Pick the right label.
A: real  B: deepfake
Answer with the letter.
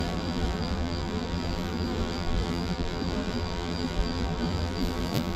B